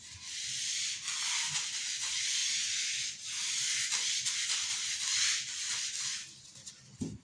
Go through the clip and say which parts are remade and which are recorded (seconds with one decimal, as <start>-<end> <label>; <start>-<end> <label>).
0.0-7.2 recorded